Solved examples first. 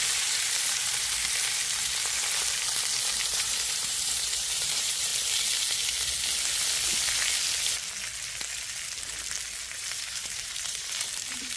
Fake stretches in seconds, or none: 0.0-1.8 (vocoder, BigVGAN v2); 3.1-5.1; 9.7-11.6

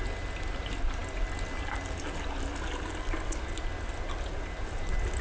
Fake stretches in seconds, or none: none

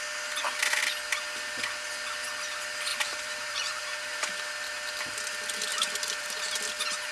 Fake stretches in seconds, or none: 2.9-3.8 (vocoder, BigVGAN v2); 5.7-6.6

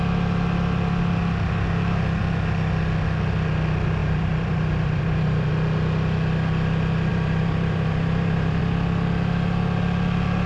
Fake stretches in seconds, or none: 4.0-5.5 (vocoder, BigVGAN v2); 7.1-8.6

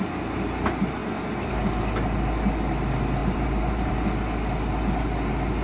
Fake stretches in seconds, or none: 3.2-3.9 (vocoder, BigVGAN v2)